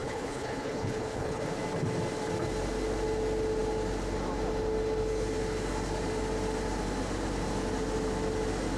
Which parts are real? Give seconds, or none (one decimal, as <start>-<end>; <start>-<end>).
1.4-8.8